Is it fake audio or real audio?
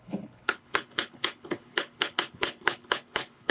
fake